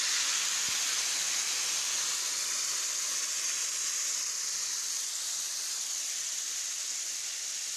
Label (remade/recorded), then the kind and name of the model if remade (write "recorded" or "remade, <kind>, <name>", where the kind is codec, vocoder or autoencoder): recorded